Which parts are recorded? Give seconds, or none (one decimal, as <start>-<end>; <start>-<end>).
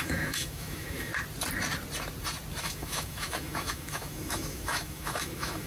1.1-2.6